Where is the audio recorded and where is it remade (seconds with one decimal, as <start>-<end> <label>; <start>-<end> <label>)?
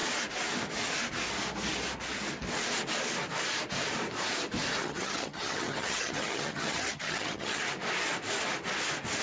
0.0-4.8 recorded; 4.8-7.6 remade; 7.6-9.2 recorded